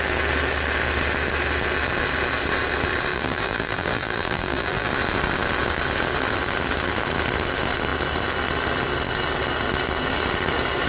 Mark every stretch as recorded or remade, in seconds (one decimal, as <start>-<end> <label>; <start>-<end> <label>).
0.0-3.1 recorded; 3.1-4.9 remade; 4.9-10.9 recorded